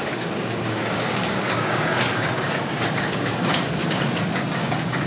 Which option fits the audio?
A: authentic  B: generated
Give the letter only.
B